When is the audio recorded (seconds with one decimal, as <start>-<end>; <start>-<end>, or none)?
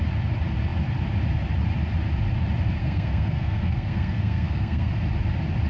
0.0-2.8; 4.9-5.7